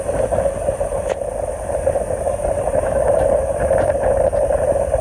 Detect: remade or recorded recorded